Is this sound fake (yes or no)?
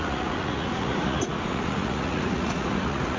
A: yes